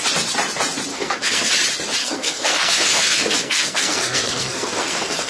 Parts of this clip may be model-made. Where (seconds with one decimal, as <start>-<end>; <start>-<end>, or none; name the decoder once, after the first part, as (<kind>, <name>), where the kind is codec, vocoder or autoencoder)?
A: 0.9-1.5 (codec, SNAC); 2.0-5.3